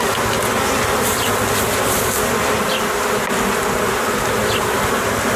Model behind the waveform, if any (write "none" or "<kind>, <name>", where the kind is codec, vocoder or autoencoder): none